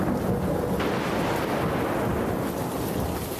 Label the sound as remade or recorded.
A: recorded